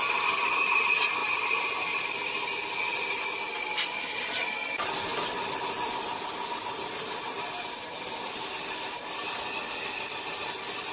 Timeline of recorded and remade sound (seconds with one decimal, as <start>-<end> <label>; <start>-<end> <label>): 0.0-1.2 recorded; 1.2-2.8 remade; 2.8-5.1 recorded; 5.1-6.5 remade; 6.5-10.9 recorded